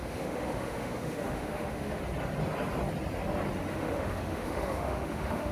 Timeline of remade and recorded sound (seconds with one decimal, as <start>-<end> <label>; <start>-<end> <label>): 0.0-2.0 remade; 2.0-3.7 recorded; 3.7-5.5 remade

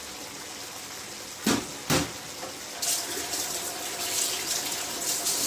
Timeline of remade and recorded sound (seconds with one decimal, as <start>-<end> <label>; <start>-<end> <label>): 0.0-5.5 recorded

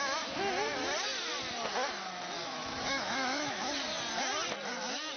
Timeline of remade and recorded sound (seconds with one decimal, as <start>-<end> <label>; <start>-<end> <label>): 0.0-2.4 recorded; 2.4-3.7 remade; 3.7-5.2 recorded

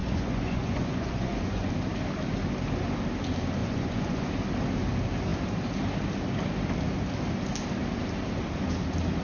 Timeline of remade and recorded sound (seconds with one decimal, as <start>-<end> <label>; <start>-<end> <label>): 0.0-1.7 remade; 1.7-3.6 recorded; 3.6-4.3 remade; 4.3-9.2 recorded

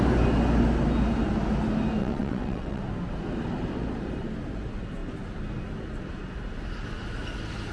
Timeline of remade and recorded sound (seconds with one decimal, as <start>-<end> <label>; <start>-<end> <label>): 0.0-2.0 recorded; 2.0-2.8 remade; 2.8-7.7 recorded

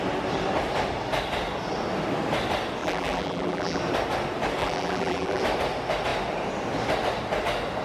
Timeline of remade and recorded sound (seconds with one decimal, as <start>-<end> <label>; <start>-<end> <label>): 0.0-2.8 recorded; 2.8-3.8 remade; 3.8-4.6 recorded; 4.6-5.4 remade; 5.4-7.8 recorded

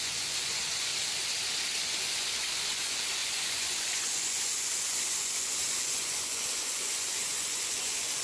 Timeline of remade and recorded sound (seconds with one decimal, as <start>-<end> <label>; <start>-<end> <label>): 0.0-0.9 remade; 0.9-1.8 recorded; 1.8-8.2 remade